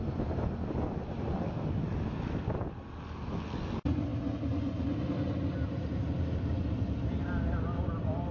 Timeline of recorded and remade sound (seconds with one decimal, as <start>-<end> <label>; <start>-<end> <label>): 0.0-8.3 recorded